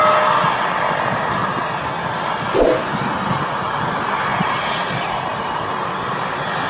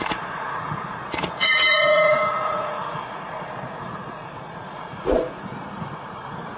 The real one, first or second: first